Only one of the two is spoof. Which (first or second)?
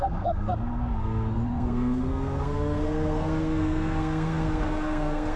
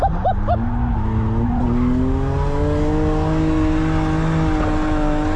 first